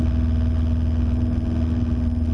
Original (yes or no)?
yes